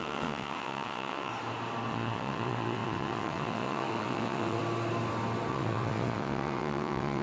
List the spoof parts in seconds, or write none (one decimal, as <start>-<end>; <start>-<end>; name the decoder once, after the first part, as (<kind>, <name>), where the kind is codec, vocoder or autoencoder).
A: 0.0-1.3 (vocoder, WaveNeXt); 1.9-4.6; 5.5-7.2